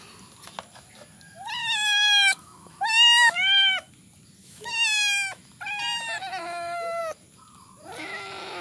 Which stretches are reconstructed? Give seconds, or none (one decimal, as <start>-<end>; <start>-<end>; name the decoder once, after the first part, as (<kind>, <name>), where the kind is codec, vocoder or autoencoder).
1.6-3.9 (autoencoder, DAC-VAE); 4.4-5.4; 6.4-7.0